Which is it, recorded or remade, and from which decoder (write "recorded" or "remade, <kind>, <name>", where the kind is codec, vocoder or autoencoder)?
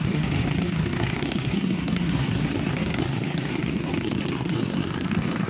remade, codec, SNAC